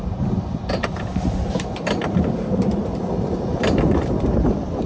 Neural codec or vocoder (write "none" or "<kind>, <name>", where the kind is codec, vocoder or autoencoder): none